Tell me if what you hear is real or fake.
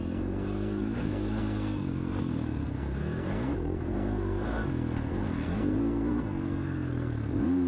fake